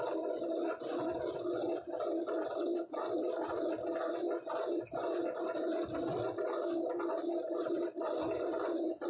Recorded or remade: recorded